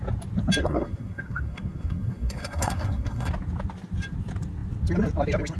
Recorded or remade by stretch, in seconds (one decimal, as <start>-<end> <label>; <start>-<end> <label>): 0.0-0.6 recorded; 0.6-3.3 remade; 3.3-5.6 recorded